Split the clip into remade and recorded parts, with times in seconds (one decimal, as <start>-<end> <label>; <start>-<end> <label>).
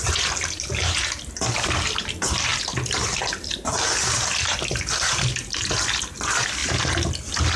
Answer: 0.0-7.6 recorded